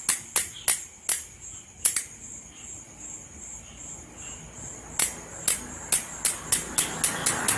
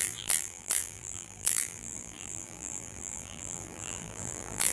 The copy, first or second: second